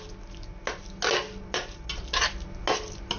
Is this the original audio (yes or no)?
yes